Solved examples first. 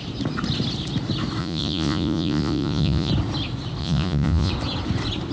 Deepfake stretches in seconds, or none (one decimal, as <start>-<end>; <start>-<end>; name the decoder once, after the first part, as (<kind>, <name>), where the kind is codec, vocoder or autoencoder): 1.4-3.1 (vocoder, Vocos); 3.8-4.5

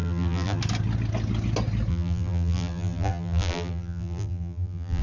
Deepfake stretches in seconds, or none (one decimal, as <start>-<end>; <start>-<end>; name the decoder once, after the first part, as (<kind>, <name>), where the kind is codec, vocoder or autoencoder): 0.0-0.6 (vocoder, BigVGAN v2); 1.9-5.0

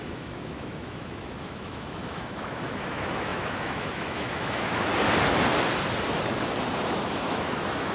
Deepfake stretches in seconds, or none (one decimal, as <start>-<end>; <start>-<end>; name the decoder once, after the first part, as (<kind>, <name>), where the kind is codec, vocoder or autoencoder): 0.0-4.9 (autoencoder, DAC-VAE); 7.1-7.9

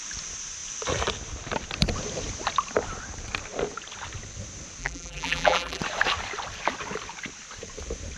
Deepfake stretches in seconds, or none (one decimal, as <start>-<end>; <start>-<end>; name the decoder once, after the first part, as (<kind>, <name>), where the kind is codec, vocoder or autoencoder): 4.8-5.8 (vocoder, BigVGAN v2)

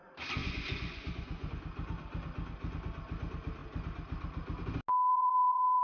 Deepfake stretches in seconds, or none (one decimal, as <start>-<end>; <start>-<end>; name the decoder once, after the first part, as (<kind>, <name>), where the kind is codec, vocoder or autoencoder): 0.4-1.5 (vocoder, Vocos); 5.1-5.8

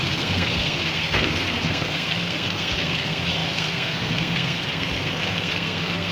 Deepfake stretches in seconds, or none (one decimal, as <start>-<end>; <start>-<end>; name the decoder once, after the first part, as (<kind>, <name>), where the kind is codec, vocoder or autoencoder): 0.0-6.1 (codec, SNAC)